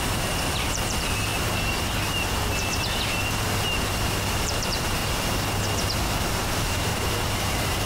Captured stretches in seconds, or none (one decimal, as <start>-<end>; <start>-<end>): 1.3-4.2; 5.0-6.3; 6.9-7.9